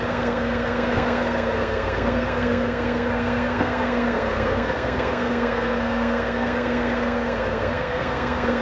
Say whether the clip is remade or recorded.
remade